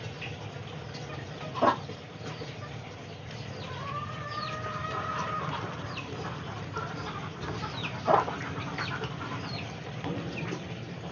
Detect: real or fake real